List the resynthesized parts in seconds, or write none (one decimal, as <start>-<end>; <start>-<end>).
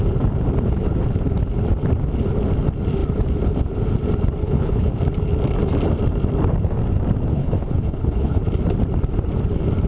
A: 4.4-4.9; 7.3-8.4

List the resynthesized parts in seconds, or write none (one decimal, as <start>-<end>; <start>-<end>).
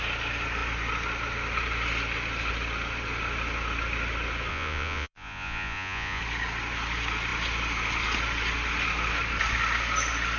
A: 4.5-6.2